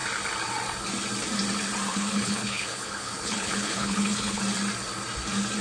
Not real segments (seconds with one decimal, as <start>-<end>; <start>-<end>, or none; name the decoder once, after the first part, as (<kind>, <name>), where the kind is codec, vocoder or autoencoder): 1.9-4.4 (codec, HILCodec)